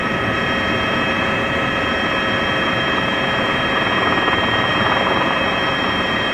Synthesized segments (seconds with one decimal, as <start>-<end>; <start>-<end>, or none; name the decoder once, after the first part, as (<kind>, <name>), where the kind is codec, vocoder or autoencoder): 0.0-6.3 (vocoder, Vocos)